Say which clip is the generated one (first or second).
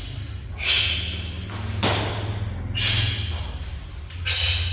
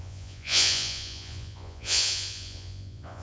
second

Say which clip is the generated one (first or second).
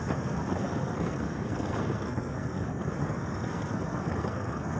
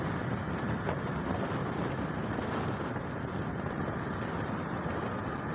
first